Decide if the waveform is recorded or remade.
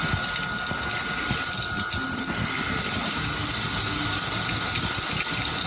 recorded